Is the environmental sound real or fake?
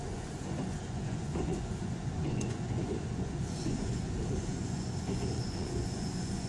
fake